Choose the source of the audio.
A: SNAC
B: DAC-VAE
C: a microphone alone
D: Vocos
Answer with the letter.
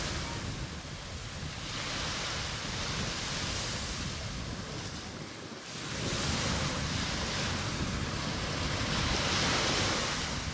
C